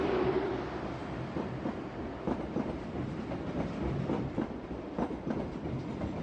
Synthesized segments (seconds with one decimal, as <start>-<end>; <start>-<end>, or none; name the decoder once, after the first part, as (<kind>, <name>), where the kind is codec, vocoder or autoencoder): 0.0-6.2 (vocoder, BigVGAN v2)